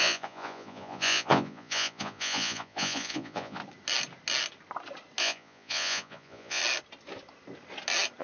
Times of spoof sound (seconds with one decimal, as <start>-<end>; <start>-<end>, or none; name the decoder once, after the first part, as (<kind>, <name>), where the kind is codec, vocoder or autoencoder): 0.0-3.6 (vocoder, Vocos); 5.2-6.6